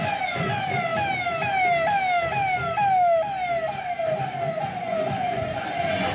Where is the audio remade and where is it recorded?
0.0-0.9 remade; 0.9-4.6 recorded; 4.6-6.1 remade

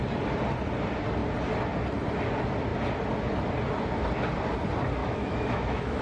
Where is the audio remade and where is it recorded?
0.0-5.0 recorded; 5.0-6.0 remade

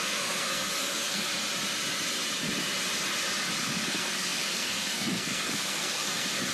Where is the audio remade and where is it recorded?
0.0-1.3 remade; 1.3-3.6 recorded; 3.6-6.5 remade

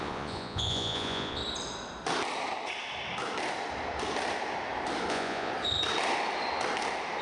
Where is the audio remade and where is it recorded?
0.0-1.4 remade; 1.4-5.1 recorded; 5.1-5.5 remade; 5.5-7.2 recorded